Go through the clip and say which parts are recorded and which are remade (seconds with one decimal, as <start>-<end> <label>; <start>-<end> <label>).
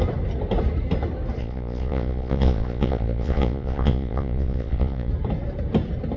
0.0-1.4 recorded; 1.4-5.1 remade; 5.1-6.2 recorded